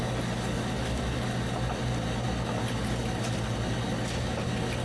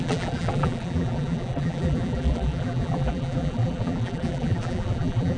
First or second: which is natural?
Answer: first